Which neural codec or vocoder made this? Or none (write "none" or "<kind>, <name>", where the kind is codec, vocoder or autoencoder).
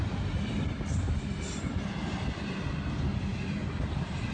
none